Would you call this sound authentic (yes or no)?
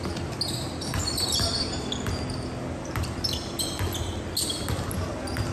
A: yes